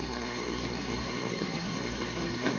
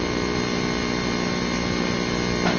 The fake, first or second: first